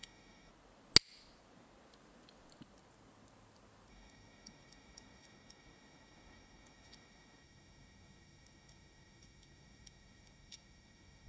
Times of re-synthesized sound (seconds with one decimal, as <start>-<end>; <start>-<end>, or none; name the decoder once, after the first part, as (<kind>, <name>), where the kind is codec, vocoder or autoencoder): 0.0-0.5 (autoencoder, DAC-VAE); 3.9-11.3